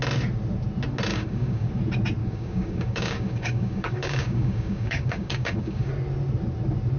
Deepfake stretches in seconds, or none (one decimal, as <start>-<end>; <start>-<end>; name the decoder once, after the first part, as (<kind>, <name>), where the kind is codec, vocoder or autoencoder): 1.1-1.7 (codec, DAC); 2.2-5.9